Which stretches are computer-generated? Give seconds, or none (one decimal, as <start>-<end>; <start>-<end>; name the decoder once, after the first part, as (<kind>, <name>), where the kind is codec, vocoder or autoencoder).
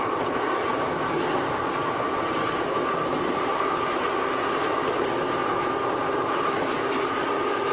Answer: 5.4-7.2 (vocoder, BigVGAN v2)